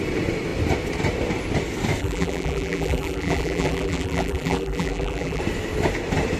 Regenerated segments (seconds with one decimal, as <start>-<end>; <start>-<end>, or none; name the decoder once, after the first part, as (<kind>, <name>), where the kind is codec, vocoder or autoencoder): 2.0-5.4 (vocoder, BigVGAN v2)